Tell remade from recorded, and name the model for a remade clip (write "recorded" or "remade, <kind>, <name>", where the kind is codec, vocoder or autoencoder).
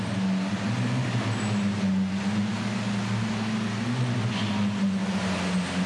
recorded